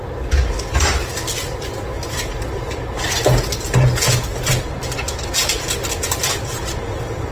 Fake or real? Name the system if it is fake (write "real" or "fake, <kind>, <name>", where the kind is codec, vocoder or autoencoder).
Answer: real